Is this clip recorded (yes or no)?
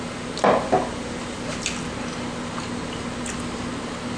yes